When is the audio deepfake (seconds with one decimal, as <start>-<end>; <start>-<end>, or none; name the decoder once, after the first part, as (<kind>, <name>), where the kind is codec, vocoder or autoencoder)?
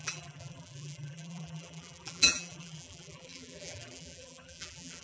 0.0-5.0 (vocoder, BigVGAN v2)